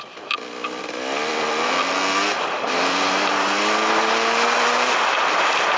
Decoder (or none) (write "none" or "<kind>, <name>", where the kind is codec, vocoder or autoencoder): none